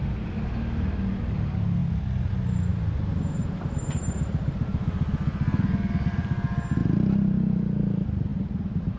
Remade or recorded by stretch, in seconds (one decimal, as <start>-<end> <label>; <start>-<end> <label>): 0.0-2.7 recorded; 2.7-5.1 remade; 5.1-6.8 recorded; 6.8-7.8 remade; 7.8-8.3 recorded; 8.3-9.0 remade